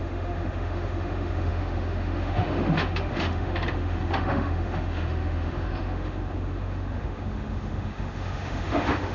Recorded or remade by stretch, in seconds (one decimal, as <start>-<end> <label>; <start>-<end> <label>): 0.0-9.1 remade